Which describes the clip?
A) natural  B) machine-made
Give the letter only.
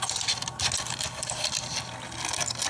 A